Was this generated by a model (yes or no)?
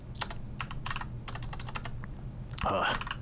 no